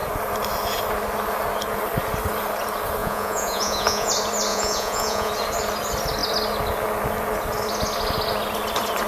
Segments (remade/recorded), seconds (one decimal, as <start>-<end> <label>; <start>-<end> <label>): 0.0-3.0 recorded; 3.0-4.1 remade; 4.1-4.5 recorded; 4.5-5.3 remade; 5.3-9.1 recorded